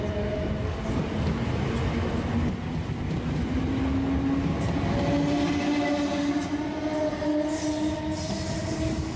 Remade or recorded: recorded